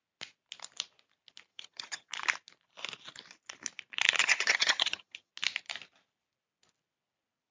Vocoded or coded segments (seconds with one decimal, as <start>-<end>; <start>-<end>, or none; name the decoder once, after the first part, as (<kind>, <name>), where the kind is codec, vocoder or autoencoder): 1.5-2.1 (vocoder, HiFi-GAN); 4.2-5.3